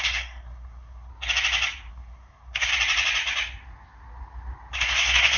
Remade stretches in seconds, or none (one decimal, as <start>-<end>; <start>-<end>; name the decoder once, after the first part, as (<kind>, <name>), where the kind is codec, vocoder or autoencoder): 0.0-1.1 (codec, SNAC); 1.9-2.7; 4.7-5.4